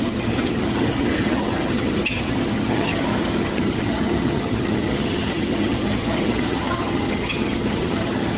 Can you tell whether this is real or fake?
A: fake